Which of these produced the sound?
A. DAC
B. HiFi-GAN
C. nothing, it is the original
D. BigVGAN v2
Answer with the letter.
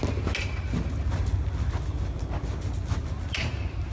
C